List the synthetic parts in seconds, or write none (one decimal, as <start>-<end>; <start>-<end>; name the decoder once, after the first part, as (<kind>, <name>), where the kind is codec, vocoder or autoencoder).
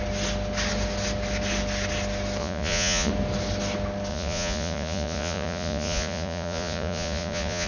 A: 2.4-3.1 (vocoder, Vocos); 4.1-7.7